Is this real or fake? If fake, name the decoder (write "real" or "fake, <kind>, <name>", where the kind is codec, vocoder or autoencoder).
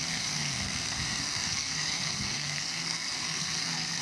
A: fake, codec, SNAC